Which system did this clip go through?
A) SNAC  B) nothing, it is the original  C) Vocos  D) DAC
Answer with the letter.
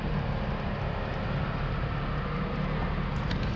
B